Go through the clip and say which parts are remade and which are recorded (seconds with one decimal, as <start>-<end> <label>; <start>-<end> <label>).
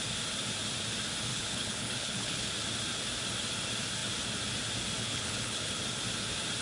0.0-1.3 recorded; 1.3-2.5 remade; 2.5-5.0 recorded; 5.0-5.7 remade; 5.7-6.6 recorded